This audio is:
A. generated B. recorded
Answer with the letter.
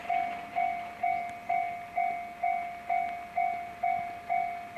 B